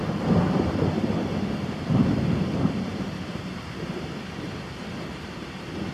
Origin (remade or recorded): remade